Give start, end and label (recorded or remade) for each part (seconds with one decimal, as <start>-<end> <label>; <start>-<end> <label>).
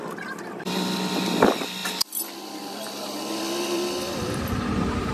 0.0-5.1 remade